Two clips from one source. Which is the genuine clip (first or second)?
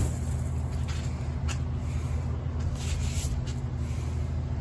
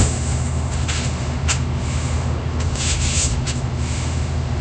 first